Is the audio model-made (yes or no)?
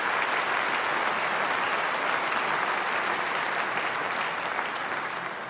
no